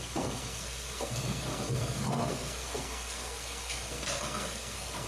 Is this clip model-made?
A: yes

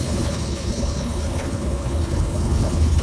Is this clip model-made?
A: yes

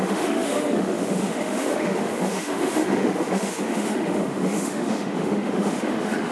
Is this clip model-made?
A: yes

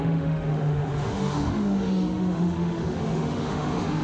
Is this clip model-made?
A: yes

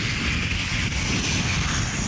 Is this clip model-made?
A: no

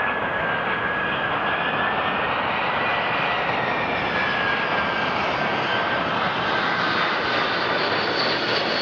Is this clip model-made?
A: no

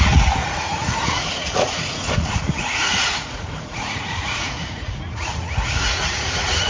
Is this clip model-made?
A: yes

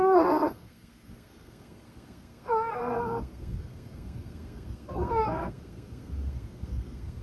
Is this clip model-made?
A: yes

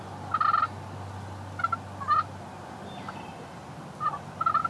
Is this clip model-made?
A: no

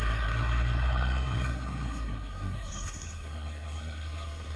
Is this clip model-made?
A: yes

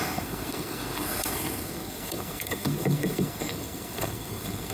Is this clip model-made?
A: yes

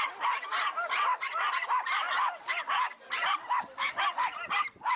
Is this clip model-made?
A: no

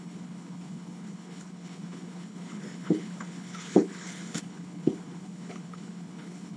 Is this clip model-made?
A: yes